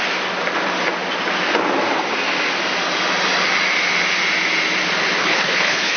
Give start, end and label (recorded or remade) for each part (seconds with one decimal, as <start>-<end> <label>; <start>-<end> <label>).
0.0-5.2 recorded; 5.2-6.0 remade